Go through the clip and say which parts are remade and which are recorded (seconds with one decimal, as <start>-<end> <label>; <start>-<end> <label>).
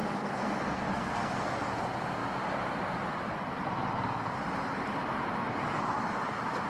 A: 0.0-1.7 remade; 1.7-6.7 recorded